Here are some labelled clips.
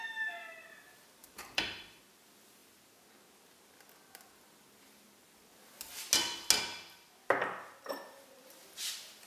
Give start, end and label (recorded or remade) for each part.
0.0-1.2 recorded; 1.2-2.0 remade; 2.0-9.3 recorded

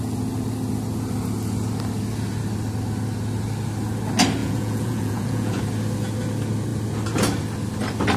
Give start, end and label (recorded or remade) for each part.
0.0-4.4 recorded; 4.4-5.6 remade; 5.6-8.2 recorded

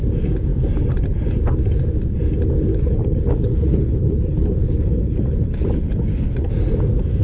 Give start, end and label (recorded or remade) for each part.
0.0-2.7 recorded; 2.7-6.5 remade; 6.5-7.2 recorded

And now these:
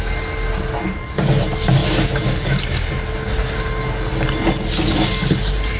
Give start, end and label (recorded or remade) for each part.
0.0-5.8 recorded